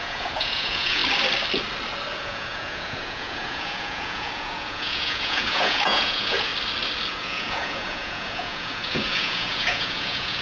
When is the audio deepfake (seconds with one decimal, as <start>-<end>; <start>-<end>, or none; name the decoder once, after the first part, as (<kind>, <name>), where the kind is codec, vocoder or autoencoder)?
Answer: 0.0-1.0 (vocoder, Vocos); 2.2-6.5; 7.1-10.4